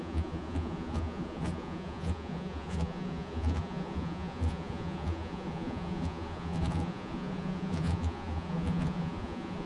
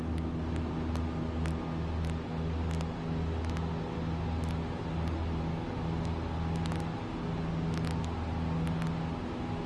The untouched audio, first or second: second